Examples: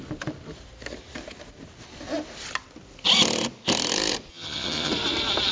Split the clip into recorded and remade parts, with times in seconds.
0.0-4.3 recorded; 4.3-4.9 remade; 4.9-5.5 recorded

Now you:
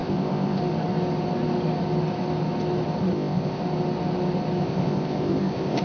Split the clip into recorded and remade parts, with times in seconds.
0.0-0.6 remade; 0.6-3.0 recorded; 3.0-3.6 remade; 3.6-4.6 recorded; 4.6-5.8 remade

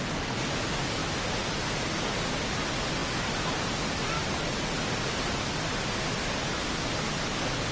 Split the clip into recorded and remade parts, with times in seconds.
0.0-7.7 recorded

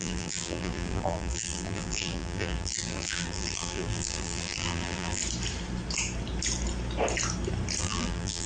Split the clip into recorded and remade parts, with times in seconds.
0.0-5.2 remade; 5.2-7.8 recorded; 7.8-8.5 remade